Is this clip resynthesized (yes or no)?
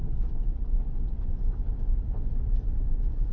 yes